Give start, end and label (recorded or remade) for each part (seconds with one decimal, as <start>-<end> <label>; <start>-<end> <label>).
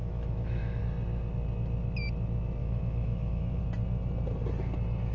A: 0.0-0.8 remade; 0.8-2.6 recorded; 2.6-3.6 remade; 3.6-5.1 recorded